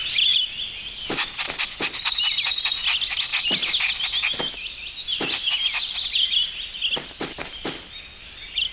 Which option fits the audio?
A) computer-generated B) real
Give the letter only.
B